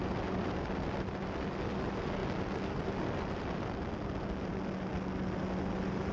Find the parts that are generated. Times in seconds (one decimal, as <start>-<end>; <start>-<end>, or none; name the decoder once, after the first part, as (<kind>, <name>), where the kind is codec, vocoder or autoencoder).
none